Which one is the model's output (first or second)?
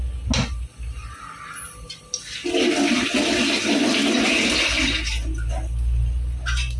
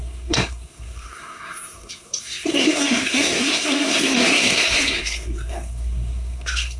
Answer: second